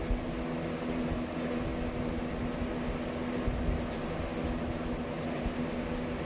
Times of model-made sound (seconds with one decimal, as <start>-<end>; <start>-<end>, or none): none